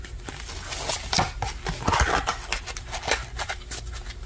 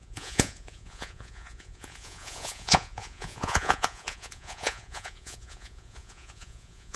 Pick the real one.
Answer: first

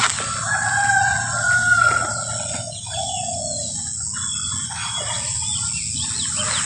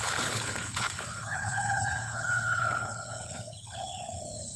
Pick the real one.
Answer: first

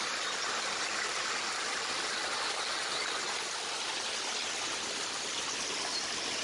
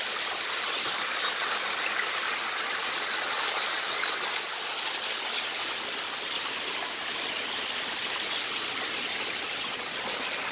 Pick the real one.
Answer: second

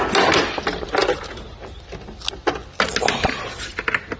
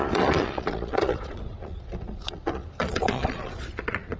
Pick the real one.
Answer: first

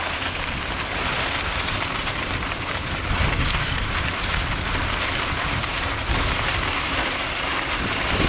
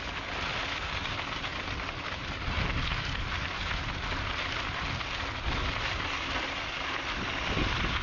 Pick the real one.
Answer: second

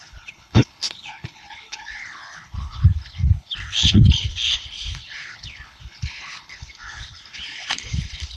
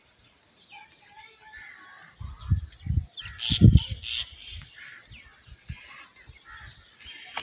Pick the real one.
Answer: second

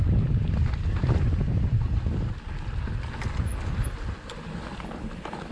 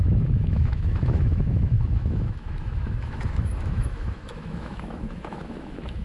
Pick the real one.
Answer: first